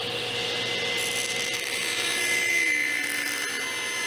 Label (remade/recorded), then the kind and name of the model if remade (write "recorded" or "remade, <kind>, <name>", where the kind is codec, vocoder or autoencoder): recorded